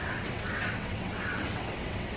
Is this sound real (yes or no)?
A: no